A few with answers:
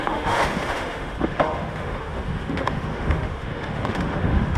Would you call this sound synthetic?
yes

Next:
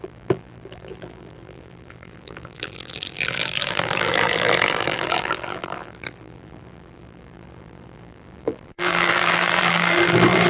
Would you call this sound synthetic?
yes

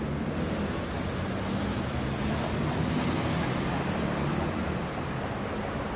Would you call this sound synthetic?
no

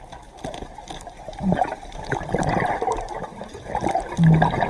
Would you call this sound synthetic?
no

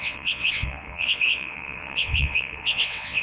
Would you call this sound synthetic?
yes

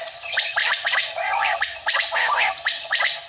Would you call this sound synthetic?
yes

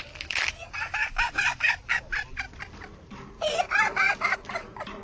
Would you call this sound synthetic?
no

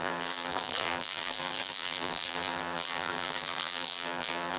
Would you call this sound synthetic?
yes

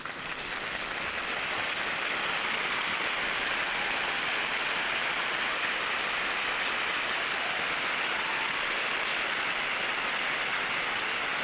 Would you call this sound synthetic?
no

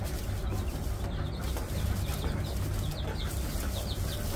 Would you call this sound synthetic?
no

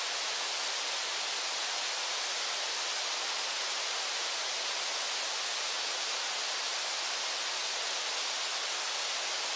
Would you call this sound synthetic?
no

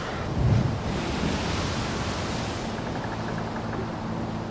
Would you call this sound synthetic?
no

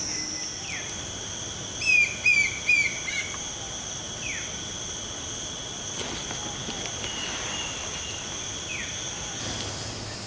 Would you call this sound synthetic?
no